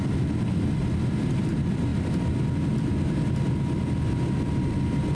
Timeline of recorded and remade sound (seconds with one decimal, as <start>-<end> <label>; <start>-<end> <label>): 0.0-5.1 recorded